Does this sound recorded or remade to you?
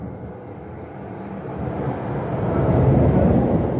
recorded